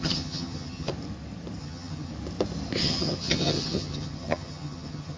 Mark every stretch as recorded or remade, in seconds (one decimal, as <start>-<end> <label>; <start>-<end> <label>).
0.0-0.9 remade; 0.9-1.6 recorded; 1.6-2.1 remade; 2.1-2.8 recorded; 2.8-5.2 remade